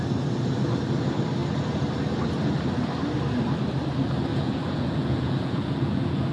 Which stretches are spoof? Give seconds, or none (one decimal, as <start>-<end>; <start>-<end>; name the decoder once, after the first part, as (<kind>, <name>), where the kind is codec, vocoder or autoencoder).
4.3-6.3 (vocoder, Vocos)